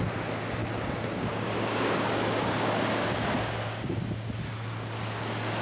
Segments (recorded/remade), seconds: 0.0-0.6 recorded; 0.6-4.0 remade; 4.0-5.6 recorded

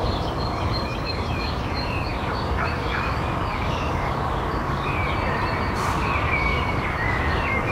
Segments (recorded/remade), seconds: 0.0-5.0 remade; 5.0-5.8 recorded; 5.8-7.7 remade

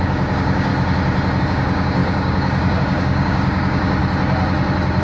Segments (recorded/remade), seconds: 0.0-0.7 remade; 0.7-1.4 recorded; 1.4-4.0 remade; 4.0-5.0 recorded

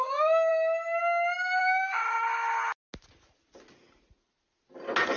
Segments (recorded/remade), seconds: 0.0-0.5 remade; 0.5-1.6 recorded; 1.6-2.0 remade; 2.0-5.2 recorded